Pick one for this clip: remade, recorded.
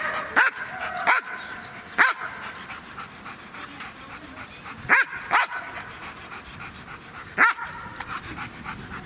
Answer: recorded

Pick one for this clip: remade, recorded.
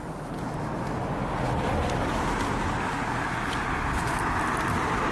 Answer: recorded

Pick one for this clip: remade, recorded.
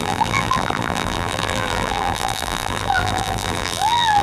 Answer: remade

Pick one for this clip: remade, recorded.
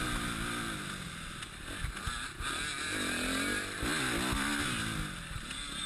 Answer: recorded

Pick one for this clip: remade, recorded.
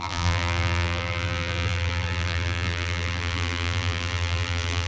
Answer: remade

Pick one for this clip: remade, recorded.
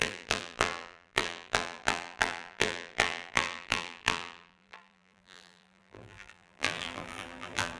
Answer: remade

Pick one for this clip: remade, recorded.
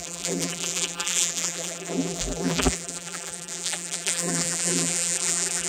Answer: remade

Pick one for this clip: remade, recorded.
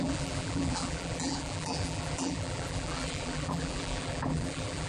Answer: remade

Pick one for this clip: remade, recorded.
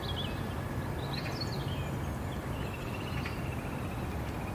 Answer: recorded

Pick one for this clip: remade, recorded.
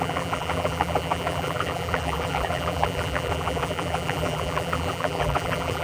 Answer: remade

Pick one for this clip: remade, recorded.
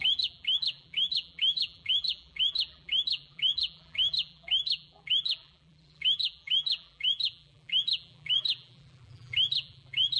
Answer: remade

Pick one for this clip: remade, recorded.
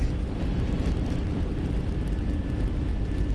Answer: recorded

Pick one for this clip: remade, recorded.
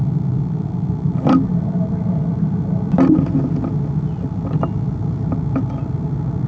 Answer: recorded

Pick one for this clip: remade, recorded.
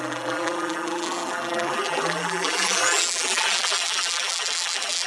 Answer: remade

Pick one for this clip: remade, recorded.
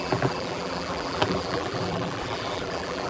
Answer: remade